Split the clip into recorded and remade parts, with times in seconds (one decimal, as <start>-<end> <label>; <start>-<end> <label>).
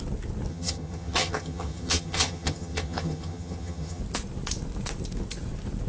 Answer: 0.0-0.5 recorded; 0.5-4.0 remade; 4.0-5.9 recorded